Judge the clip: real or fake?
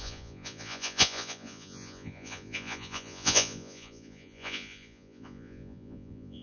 fake